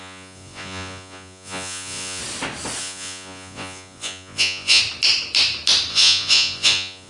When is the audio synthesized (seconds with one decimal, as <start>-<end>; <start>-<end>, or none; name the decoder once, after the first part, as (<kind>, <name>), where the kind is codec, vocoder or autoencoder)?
0.0-2.2 (vocoder, Vocos); 2.8-4.8; 5.9-7.1